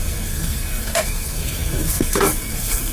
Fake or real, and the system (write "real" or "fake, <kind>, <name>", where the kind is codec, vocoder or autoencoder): fake, codec, SNAC